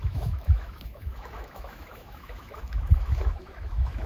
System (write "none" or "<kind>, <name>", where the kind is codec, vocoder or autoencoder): autoencoder, DAC-VAE